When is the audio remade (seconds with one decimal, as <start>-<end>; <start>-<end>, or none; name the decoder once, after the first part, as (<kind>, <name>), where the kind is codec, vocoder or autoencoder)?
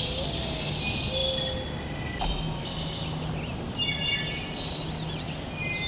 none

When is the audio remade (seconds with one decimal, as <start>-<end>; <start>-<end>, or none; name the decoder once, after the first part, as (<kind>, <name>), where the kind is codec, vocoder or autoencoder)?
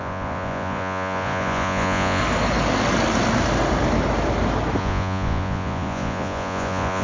0.0-2.2 (vocoder, Vocos); 4.8-7.0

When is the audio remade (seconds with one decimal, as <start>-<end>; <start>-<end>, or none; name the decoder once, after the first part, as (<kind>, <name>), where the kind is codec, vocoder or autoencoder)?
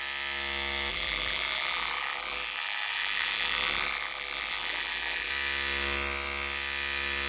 0.9-5.3 (vocoder, BigVGAN v2)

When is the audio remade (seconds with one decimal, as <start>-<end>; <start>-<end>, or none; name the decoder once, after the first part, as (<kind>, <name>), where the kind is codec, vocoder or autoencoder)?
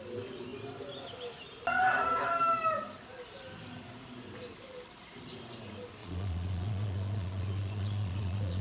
6.0-8.6 (vocoder, Vocos)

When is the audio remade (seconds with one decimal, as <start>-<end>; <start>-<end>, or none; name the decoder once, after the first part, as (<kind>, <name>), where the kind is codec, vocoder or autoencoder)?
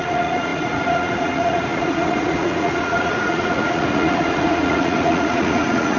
0.0-6.0 (vocoder, Vocos)